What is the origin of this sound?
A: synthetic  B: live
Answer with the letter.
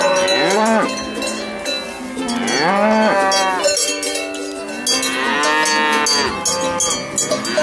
B